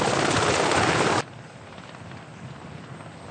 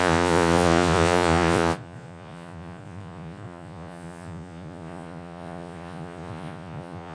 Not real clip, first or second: second